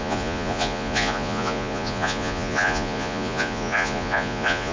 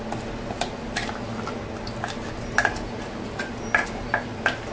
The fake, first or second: first